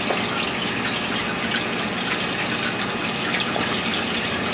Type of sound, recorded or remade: recorded